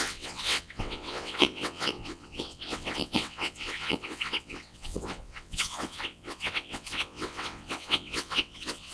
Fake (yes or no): yes